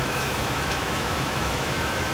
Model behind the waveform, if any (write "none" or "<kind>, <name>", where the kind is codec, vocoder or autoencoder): autoencoder, DAC-VAE